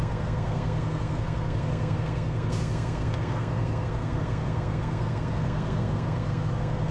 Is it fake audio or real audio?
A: fake